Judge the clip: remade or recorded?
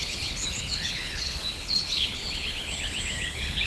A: remade